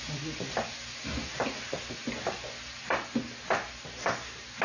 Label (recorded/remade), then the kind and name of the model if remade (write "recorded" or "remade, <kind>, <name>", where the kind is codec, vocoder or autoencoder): recorded